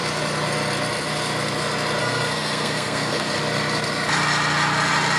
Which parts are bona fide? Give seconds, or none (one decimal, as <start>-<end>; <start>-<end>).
0.0-2.0; 3.4-5.2